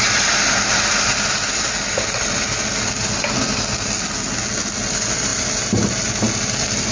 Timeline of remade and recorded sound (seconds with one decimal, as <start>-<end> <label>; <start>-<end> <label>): 0.0-6.9 recorded